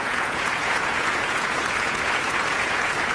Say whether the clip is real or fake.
fake